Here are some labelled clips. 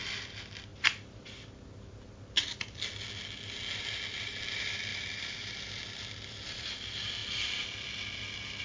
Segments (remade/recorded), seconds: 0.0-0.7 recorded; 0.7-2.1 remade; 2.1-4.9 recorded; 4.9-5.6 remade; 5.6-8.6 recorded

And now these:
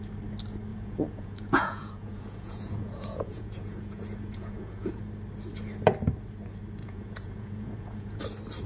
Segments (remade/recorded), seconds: 0.0-0.7 recorded; 0.7-5.0 remade; 5.0-6.8 recorded; 6.8-8.2 remade; 8.2-8.7 recorded

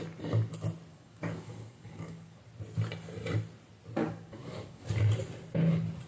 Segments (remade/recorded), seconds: 0.0-0.9 recorded; 0.9-2.4 remade; 2.4-4.0 recorded; 4.0-4.9 remade; 4.9-6.1 recorded

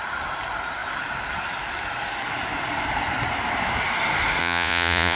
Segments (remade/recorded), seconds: 0.0-4.4 recorded; 4.4-5.2 remade

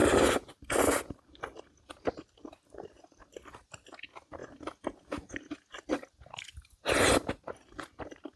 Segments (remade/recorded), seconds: 0.0-8.4 recorded

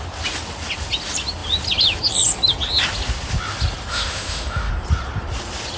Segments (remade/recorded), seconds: 0.0-3.9 recorded; 3.9-4.7 remade; 4.7-5.8 recorded

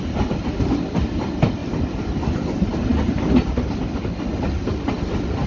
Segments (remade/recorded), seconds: 0.0-5.5 recorded